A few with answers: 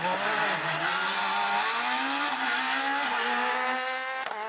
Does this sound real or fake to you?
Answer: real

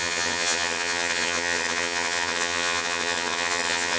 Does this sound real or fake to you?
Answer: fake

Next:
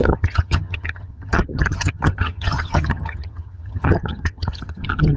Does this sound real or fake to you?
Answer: fake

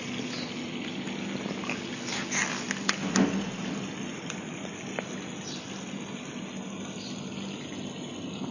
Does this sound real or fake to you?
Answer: real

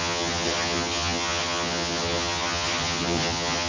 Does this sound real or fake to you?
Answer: fake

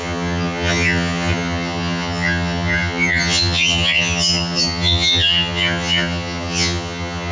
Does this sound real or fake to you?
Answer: fake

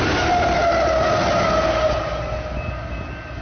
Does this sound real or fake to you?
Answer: real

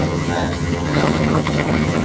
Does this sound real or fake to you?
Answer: fake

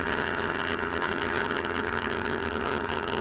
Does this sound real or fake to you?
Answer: fake